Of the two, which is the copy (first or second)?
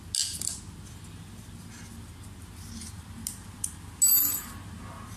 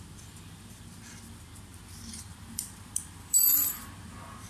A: second